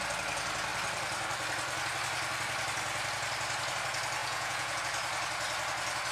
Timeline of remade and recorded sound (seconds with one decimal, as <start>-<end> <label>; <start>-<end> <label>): 0.0-4.2 recorded; 4.2-4.8 remade; 4.8-6.1 recorded